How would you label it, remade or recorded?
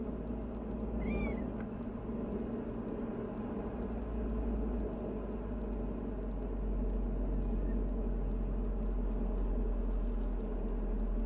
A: recorded